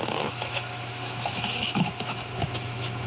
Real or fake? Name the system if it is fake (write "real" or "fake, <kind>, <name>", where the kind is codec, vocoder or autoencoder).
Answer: fake, autoencoder, DAC-VAE